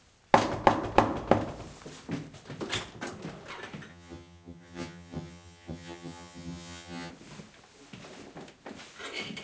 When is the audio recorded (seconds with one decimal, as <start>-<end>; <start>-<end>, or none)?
0.0-3.9; 7.1-9.4